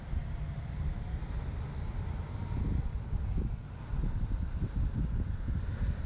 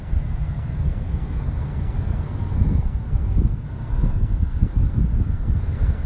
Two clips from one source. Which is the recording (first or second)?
first